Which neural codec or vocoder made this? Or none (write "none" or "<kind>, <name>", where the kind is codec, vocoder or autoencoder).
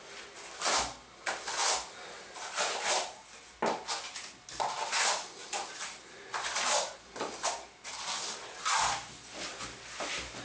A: none